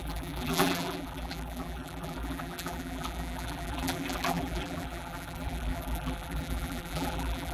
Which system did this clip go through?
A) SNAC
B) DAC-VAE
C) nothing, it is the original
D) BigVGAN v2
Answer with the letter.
D